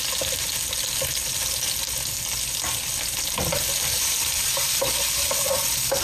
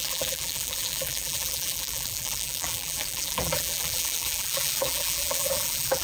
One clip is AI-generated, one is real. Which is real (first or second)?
first